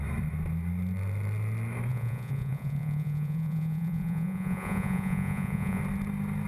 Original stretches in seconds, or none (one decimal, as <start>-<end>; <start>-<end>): 0.0-1.9; 5.8-6.5